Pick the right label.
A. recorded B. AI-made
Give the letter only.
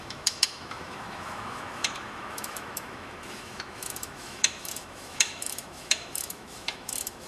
B